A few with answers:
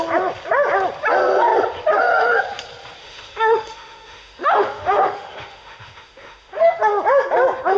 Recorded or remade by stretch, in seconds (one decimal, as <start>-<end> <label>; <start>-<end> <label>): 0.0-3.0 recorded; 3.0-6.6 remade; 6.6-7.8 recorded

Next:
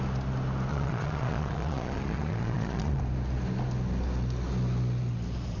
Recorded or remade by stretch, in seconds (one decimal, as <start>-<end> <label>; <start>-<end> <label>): 0.0-0.7 recorded; 0.7-3.0 remade; 3.0-5.6 recorded

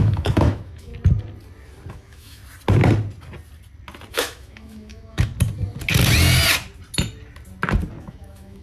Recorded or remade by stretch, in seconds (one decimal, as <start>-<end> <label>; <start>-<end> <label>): 0.0-0.9 remade; 0.9-1.9 recorded; 1.9-2.4 remade; 2.4-4.1 recorded; 4.1-5.3 remade; 5.3-8.0 recorded; 8.0-8.6 remade

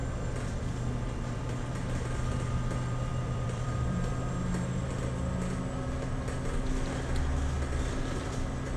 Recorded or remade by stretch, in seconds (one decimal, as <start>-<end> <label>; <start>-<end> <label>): 0.0-3.1 recorded; 3.1-4.3 remade; 4.3-8.8 recorded